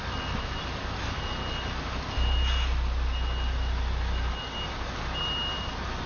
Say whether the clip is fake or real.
real